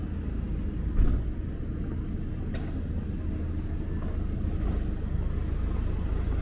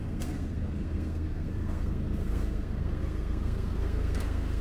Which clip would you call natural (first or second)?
first